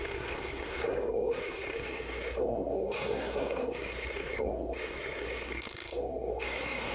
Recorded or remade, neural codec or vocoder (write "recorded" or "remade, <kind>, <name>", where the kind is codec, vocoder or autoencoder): remade, codec, SNAC